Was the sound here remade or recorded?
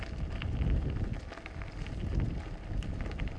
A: recorded